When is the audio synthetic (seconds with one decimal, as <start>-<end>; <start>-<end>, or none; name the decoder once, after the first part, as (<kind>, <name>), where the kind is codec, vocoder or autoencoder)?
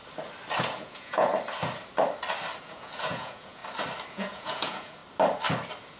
0.6-1.3 (vocoder, Vocos); 2.6-3.6; 4.1-5.0